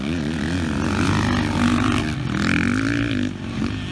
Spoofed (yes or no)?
no